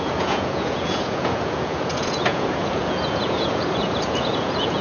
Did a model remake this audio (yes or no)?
yes